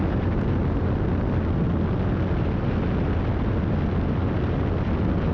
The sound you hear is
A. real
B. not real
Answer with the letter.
A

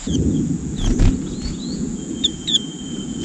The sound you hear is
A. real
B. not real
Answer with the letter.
B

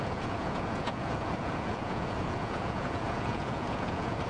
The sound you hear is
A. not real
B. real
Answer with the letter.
A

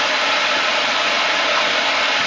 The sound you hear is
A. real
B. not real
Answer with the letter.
A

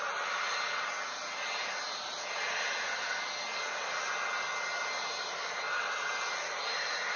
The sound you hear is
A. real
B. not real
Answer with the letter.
A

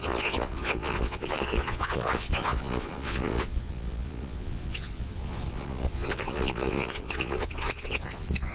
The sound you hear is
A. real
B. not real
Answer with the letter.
B